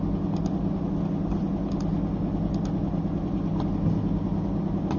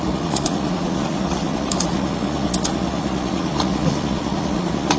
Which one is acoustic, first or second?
first